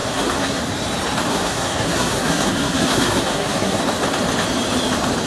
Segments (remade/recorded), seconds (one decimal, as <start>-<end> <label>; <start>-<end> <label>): 0.0-0.6 remade; 0.6-1.3 recorded; 1.3-3.8 remade; 3.8-5.3 recorded